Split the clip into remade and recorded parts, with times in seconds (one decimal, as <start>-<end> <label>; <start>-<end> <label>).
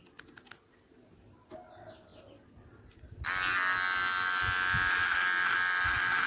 0.0-6.3 recorded